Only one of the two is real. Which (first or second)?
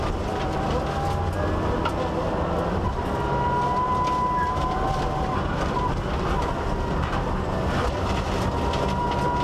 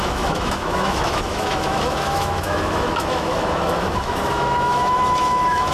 first